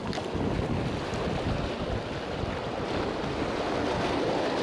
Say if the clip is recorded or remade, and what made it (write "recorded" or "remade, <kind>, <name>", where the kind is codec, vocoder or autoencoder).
recorded